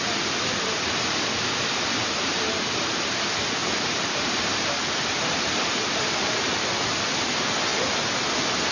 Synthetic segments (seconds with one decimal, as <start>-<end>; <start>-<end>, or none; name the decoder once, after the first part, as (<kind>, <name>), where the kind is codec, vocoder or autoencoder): 3.6-6.5 (vocoder, BigVGAN v2)